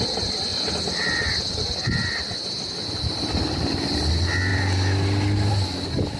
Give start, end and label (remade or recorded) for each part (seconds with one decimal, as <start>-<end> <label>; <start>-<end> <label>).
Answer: 0.0-6.2 recorded